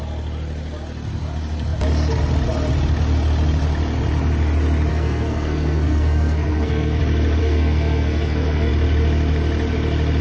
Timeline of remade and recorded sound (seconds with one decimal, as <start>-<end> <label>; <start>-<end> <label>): 0.0-4.9 recorded; 4.9-7.0 remade; 7.0-7.4 recorded; 7.4-8.7 remade; 8.7-10.2 recorded